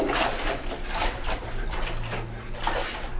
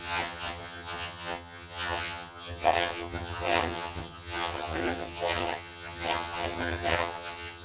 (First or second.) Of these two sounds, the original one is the first